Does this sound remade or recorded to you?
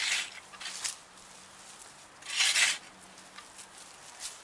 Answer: recorded